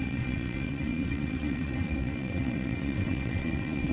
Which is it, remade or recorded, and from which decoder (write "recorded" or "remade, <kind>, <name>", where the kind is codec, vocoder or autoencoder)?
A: remade, vocoder, WaveNeXt